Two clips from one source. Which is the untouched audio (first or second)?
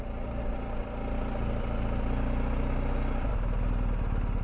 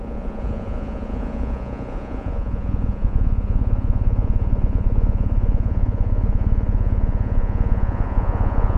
first